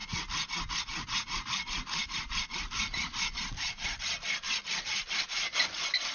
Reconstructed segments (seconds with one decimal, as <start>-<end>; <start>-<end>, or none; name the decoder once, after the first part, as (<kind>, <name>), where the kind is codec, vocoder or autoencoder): none